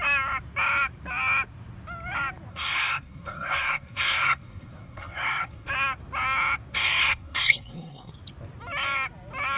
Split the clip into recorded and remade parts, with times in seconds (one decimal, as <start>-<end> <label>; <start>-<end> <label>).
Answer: 0.0-2.5 recorded; 2.5-5.7 remade; 5.7-6.7 recorded; 6.7-8.1 remade; 8.1-9.6 recorded